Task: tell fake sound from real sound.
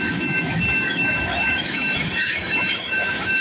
fake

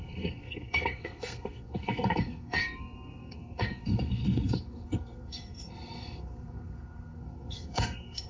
fake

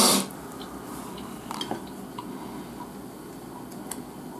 real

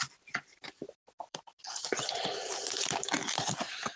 fake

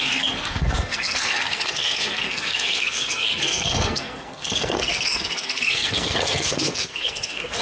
fake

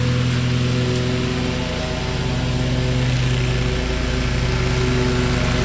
real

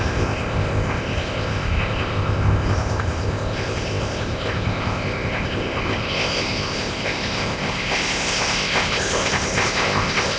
fake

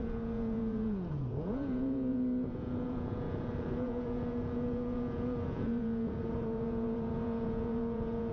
fake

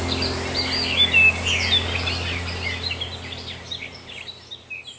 real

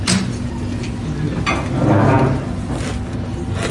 real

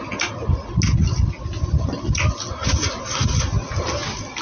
real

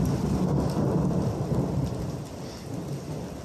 real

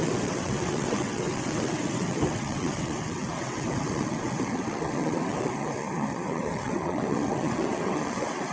fake